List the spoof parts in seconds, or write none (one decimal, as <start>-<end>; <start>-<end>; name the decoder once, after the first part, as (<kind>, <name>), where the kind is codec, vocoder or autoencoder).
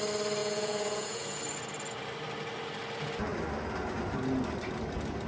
0.4-1.4 (vocoder, Vocos)